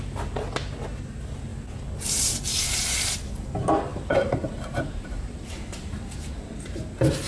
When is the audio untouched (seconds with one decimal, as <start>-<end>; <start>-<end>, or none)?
0.0-3.9; 6.3-7.3